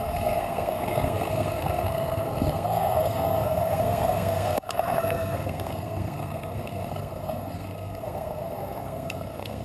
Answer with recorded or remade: remade